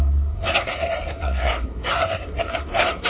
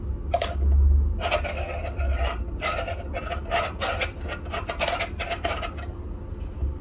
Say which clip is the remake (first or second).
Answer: first